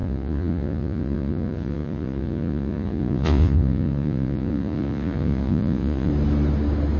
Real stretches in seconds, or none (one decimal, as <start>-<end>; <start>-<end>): 6.1-7.0